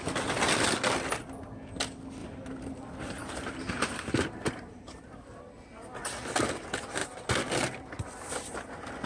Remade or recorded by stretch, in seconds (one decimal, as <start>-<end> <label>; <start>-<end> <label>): 0.0-2.2 recorded; 2.2-5.4 remade; 5.4-9.1 recorded